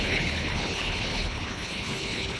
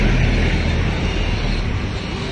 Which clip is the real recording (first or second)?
second